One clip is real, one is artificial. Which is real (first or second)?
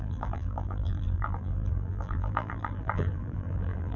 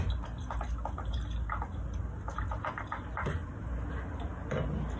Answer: second